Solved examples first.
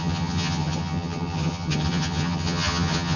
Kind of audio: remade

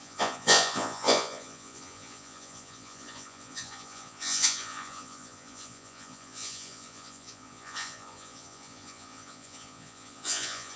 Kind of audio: remade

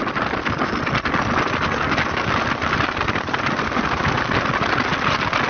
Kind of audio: recorded